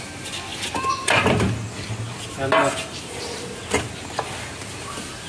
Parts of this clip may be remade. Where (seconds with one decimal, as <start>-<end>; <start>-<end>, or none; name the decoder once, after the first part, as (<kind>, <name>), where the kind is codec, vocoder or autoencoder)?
none